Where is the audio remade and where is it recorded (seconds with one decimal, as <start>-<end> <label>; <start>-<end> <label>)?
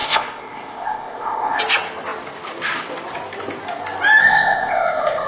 0.0-1.6 remade; 1.6-4.2 recorded; 4.2-5.3 remade